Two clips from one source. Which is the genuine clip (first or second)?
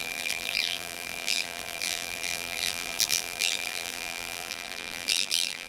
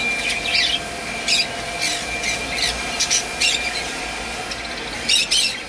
second